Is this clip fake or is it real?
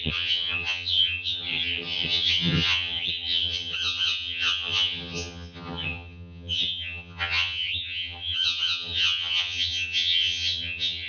fake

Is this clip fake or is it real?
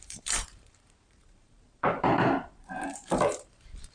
fake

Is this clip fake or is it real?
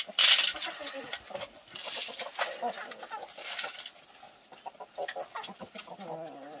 real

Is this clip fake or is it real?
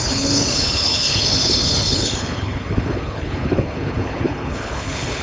fake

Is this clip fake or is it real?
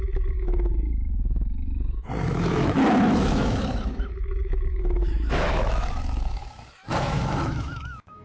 fake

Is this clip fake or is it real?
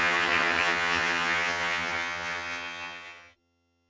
fake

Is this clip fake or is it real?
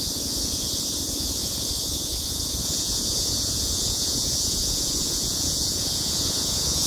fake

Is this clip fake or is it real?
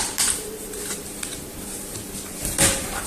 fake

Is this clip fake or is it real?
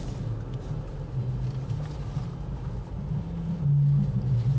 real